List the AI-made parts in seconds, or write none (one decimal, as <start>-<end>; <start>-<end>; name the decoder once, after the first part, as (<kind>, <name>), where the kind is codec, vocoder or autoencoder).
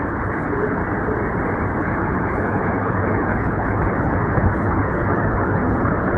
0.0-0.8 (codec, HILCodec); 1.8-6.2